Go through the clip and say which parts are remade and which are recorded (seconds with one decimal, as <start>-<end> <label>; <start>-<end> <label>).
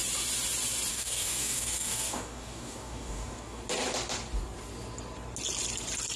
0.0-0.9 recorded; 0.9-3.6 remade; 3.6-6.2 recorded